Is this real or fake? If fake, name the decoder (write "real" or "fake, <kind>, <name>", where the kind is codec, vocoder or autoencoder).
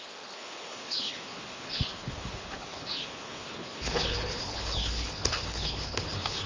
fake, codec, HILCodec